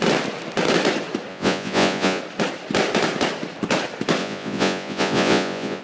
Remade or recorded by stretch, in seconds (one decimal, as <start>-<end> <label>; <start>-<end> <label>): 0.0-1.3 recorded; 1.3-2.2 remade; 2.2-4.2 recorded; 4.2-5.8 remade